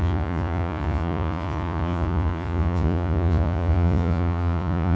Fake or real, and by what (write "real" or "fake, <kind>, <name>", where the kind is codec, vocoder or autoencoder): fake, vocoder, Vocos